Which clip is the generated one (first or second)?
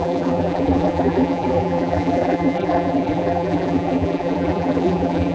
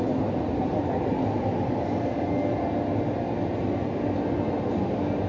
first